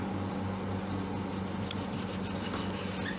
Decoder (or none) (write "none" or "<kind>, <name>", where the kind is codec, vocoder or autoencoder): none